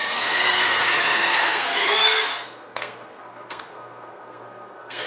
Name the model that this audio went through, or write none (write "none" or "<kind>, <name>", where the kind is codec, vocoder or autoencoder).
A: codec, SNAC